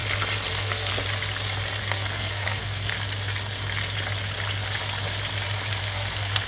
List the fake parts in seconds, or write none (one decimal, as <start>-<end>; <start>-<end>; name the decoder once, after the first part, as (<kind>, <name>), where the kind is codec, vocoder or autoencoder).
0.5-0.9 (codec, SNAC); 1.8-2.9; 5.8-6.5